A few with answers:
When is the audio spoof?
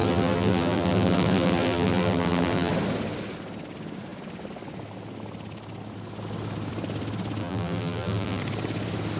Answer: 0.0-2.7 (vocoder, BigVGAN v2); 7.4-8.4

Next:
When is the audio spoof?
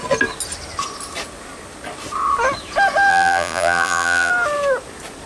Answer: 3.1-4.3 (vocoder, BigVGAN v2)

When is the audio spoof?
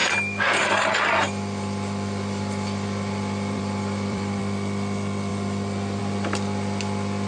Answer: 0.0-4.4 (vocoder, BigVGAN v2); 5.3-6.0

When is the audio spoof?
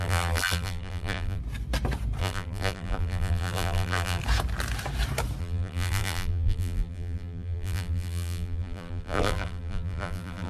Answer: 0.0-1.4 (vocoder, BigVGAN v2); 2.2-4.2; 5.4-10.5